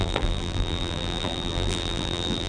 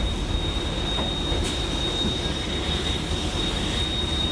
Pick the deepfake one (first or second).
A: first